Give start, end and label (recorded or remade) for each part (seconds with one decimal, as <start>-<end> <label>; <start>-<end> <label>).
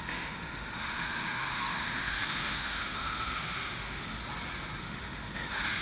0.0-4.2 remade; 4.2-4.8 recorded; 4.8-5.8 remade